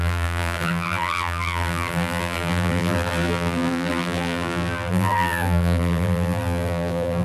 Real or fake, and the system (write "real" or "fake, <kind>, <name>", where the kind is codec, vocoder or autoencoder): fake, vocoder, BigVGAN v2